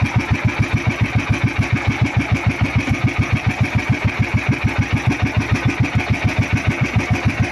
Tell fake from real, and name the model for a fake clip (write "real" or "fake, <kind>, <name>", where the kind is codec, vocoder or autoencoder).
real